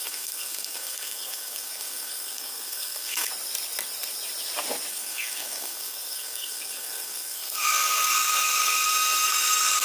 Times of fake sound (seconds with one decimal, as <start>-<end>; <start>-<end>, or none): 0.0-3.3; 4.9-9.8